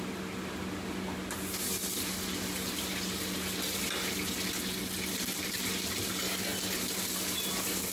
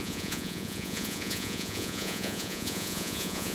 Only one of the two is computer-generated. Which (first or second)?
second